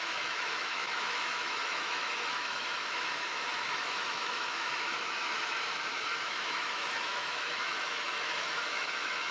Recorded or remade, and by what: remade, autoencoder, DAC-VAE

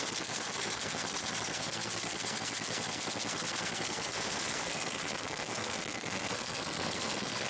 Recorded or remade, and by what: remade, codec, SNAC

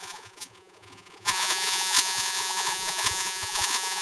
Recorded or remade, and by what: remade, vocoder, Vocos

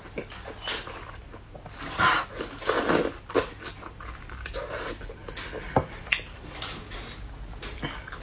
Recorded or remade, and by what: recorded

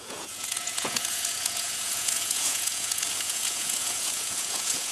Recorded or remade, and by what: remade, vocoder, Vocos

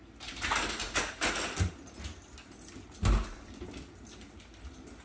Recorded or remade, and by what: recorded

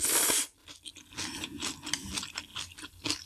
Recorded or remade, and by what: recorded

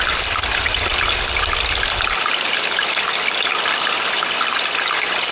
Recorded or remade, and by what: remade, vocoder, BigVGAN v2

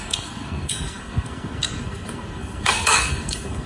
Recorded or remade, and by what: remade, codec, SNAC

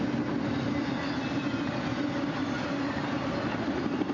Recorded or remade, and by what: recorded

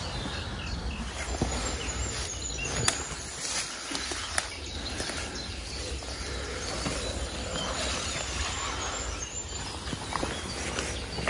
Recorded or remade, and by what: recorded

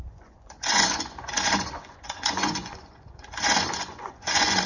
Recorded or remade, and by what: remade, vocoder, Vocos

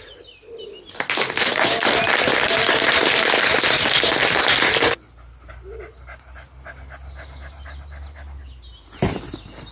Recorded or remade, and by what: recorded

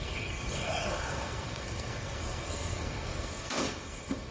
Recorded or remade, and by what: remade, codec, SNAC